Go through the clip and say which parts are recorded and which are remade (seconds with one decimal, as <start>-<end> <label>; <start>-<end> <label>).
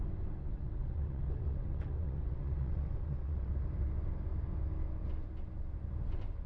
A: 0.0-0.5 recorded; 0.5-3.5 remade; 3.5-6.5 recorded